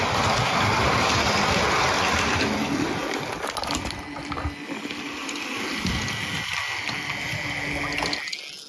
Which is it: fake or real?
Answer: real